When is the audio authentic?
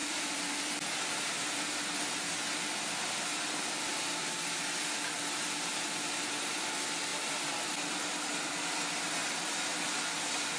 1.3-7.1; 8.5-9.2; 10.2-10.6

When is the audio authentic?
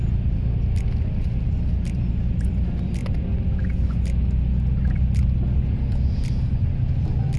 0.0-7.4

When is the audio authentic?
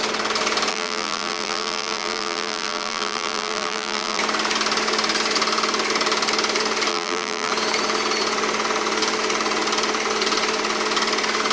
0.0-0.7; 4.2-6.9; 7.5-11.5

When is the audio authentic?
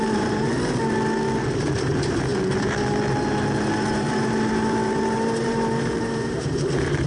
0.5-1.7; 2.3-3.9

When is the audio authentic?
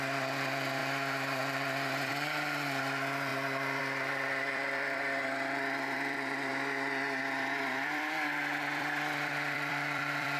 3.3-3.8; 6.5-7.2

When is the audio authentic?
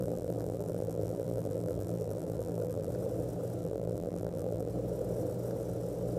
2.9-3.6; 4.7-6.2